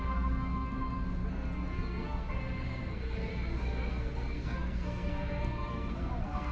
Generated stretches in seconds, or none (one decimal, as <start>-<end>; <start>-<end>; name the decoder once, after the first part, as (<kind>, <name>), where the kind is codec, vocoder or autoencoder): 0.0-0.7 (codec, SNAC); 1.3-3.3; 3.9-6.5